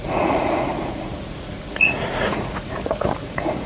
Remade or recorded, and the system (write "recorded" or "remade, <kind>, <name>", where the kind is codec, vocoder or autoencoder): remade, vocoder, Vocos